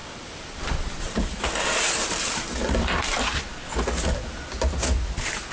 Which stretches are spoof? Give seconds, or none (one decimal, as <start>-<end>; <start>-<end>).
0.0-1.5; 2.0-3.2